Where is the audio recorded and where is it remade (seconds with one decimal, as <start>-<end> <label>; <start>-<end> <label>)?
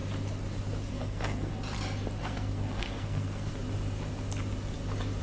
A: 0.0-0.9 recorded; 0.9-1.5 remade; 1.5-2.2 recorded; 2.2-3.5 remade; 3.5-5.2 recorded